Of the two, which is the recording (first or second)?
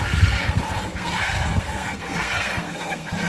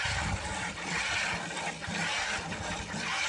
second